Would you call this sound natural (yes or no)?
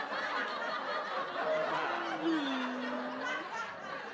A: yes